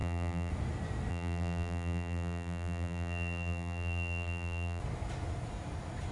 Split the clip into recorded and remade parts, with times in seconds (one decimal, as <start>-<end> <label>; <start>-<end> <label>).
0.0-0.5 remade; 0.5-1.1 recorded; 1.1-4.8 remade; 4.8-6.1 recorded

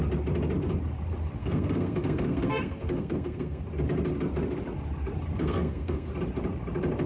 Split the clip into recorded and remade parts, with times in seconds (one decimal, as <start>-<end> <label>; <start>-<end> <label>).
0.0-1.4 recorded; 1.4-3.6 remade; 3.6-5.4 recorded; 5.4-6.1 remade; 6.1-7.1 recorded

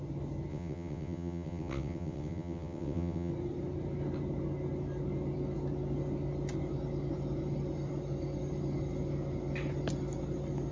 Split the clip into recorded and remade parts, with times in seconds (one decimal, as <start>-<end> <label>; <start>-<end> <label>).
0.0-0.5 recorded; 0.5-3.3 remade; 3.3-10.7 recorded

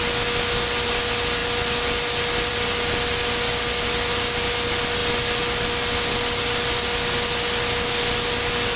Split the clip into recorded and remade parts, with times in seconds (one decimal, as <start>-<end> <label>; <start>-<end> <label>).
0.0-8.8 recorded

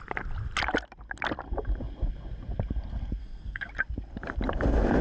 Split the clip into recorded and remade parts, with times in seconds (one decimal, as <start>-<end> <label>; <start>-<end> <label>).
0.0-3.2 recorded; 3.2-3.7 remade; 3.7-5.0 recorded

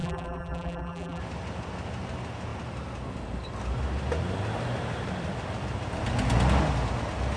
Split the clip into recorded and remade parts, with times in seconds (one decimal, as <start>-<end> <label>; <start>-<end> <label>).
0.0-1.2 remade; 1.2-7.4 recorded